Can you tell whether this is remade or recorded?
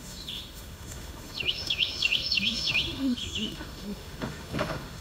remade